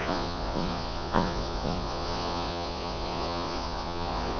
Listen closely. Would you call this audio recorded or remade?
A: remade